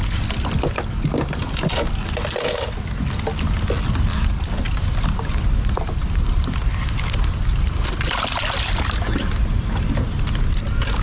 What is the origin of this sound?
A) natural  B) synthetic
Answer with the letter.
A